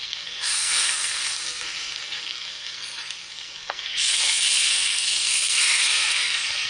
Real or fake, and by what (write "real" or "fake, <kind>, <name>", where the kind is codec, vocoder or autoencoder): fake, codec, SNAC